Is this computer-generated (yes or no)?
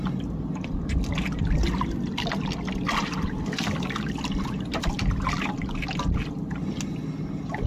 no